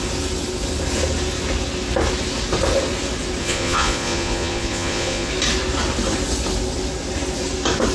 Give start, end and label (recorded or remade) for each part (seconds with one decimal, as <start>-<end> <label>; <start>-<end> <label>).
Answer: 0.0-3.4 recorded; 3.4-5.3 remade; 5.3-7.9 recorded